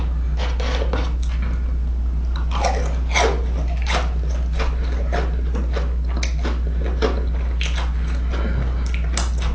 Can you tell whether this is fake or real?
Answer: real